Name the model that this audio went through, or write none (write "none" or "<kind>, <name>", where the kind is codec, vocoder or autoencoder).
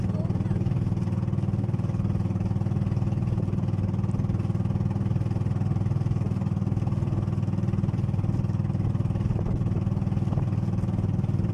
none